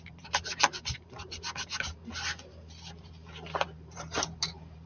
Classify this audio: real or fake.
fake